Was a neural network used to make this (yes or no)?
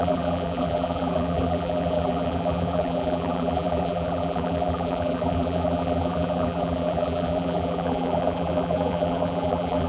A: yes